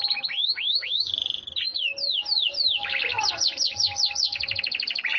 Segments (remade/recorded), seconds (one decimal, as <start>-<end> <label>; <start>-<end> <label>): 0.0-0.4 recorded; 0.4-1.1 remade; 1.1-5.2 recorded